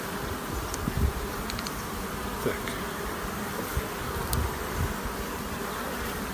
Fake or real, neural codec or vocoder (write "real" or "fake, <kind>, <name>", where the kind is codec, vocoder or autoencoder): real